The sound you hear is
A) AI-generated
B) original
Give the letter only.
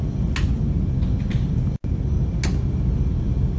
B